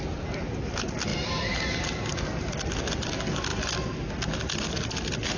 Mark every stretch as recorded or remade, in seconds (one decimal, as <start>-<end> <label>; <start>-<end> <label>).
0.0-5.4 recorded